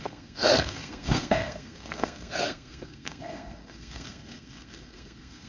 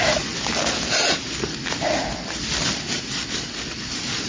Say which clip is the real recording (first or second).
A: second